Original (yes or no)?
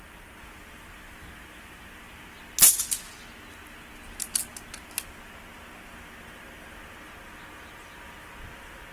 yes